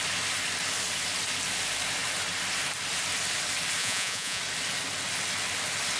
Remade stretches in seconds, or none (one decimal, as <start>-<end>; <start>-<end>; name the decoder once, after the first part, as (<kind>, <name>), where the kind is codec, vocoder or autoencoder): 3.8-4.4 (vocoder, Vocos)